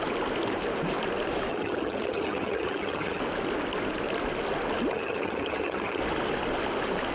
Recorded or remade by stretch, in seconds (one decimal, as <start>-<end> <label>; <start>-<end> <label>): 0.0-1.5 recorded; 1.5-3.2 remade; 3.2-4.9 recorded; 4.9-6.0 remade; 6.0-7.1 recorded